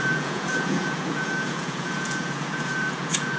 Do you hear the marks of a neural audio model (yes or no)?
yes